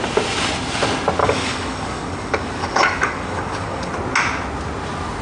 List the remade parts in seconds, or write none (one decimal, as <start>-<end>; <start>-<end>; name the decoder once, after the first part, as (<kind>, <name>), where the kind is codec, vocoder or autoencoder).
1.2-3.9 (codec, DAC)